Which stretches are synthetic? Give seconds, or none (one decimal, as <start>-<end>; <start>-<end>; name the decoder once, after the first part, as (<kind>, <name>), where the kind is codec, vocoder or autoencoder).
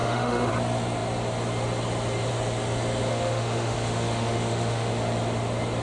0.0-0.5 (autoencoder, DAC-VAE); 3.1-4.9